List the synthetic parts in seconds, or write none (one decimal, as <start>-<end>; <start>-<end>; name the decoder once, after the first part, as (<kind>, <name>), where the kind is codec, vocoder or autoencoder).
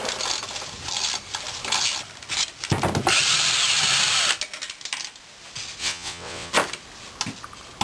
5.8-6.5 (vocoder, WaveNeXt)